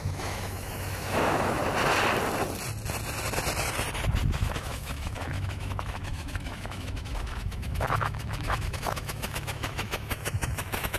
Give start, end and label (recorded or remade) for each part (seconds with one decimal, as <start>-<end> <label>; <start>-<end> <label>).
0.0-1.6 remade; 1.6-4.4 recorded; 4.4-11.0 remade